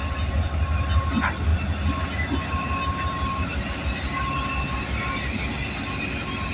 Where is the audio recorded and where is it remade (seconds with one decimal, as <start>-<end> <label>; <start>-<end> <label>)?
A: 0.0-6.5 recorded